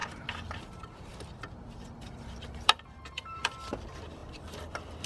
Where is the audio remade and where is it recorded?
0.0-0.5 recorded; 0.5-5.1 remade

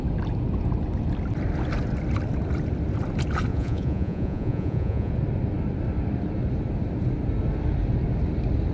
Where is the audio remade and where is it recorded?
0.0-3.5 recorded; 3.5-5.1 remade; 5.1-8.7 recorded

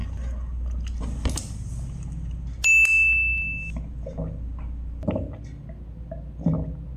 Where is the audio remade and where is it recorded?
0.0-7.0 recorded